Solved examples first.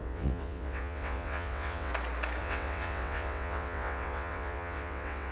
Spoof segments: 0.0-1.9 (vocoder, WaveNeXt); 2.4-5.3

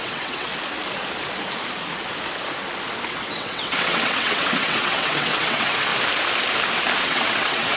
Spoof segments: 0.0-0.5 (vocoder, WaveNeXt); 3.1-5.9; 7.0-7.8

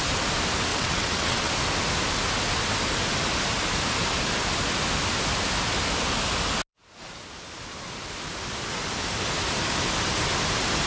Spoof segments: 0.7-1.5 (vocoder, WaveNeXt)

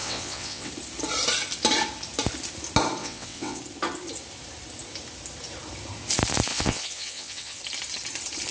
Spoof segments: 0.0-0.7 (vocoder, WaveNeXt); 3.0-3.6; 6.5-7.6